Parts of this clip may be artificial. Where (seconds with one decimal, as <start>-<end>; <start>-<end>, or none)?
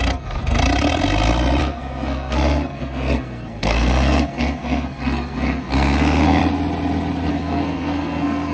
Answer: 0.0-0.6; 1.6-6.4; 7.3-8.5